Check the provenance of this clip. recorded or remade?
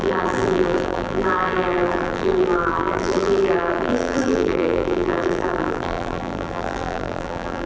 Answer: remade